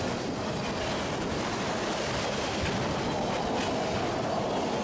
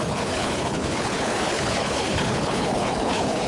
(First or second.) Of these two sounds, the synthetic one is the second